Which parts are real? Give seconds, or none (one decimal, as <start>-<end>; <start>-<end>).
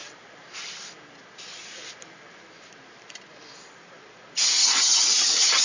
0.0-4.6